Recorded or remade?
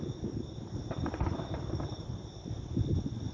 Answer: recorded